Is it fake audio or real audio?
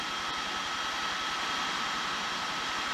real